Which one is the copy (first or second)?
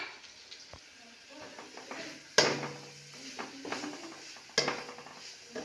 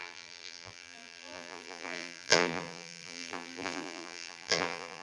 second